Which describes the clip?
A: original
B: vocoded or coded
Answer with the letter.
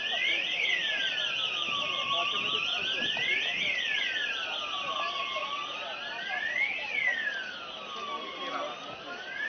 A